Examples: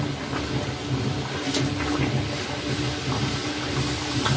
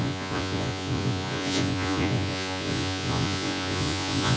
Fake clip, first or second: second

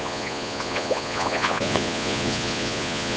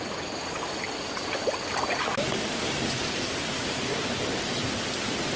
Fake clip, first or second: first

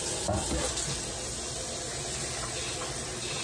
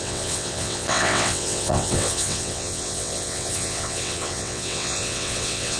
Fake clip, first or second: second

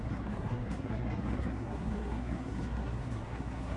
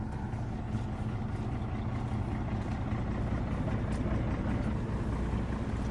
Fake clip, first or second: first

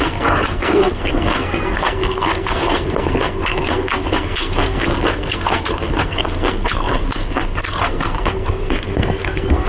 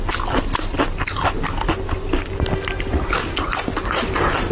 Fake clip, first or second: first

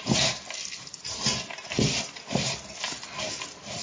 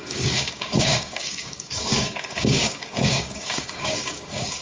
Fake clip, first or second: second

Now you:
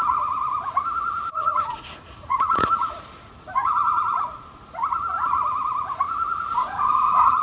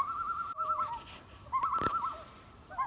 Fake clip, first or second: first